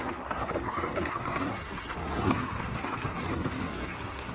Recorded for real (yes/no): no